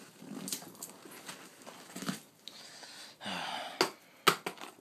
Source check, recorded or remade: recorded